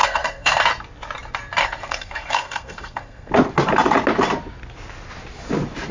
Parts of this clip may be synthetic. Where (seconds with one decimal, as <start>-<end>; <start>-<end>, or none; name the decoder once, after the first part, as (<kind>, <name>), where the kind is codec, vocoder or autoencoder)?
0.0-0.6 (codec, SNAC); 1.6-3.3